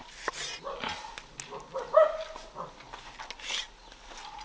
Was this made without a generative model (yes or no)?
yes